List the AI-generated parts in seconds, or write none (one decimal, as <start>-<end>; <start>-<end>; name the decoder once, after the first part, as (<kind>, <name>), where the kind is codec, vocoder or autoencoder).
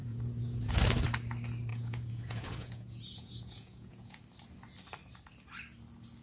0.0-0.7 (vocoder, Vocos); 1.7-4.2